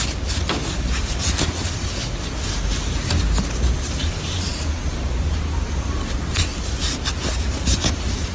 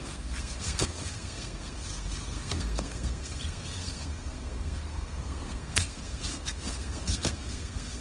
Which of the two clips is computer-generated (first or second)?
second